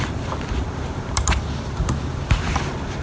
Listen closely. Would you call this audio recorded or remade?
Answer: remade